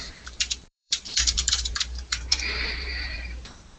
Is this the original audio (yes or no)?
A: no